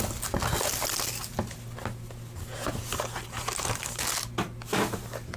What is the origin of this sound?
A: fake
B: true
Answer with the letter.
B